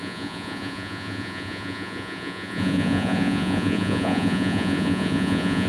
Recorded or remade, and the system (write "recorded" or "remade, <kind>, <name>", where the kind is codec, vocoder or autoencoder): remade, vocoder, Vocos